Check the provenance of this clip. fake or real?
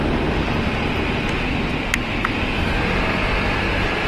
real